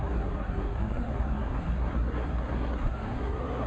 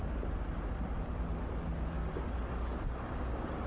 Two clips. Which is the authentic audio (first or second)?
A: second